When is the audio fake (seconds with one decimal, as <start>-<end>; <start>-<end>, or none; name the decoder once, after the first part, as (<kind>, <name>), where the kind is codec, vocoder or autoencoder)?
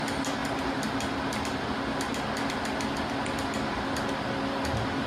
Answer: none